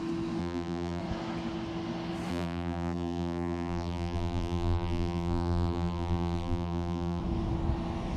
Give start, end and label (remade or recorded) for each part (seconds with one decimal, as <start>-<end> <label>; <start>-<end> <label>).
0.0-0.4 recorded; 0.4-1.0 remade; 1.0-2.3 recorded; 2.3-7.2 remade; 7.2-8.2 recorded